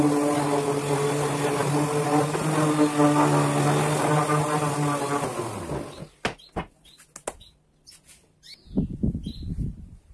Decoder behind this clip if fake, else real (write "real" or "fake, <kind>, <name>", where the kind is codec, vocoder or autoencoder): real